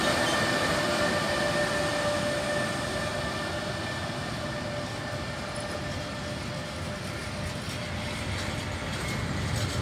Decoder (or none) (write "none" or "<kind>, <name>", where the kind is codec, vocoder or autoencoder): none